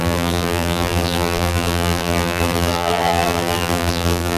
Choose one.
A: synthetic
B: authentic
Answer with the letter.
A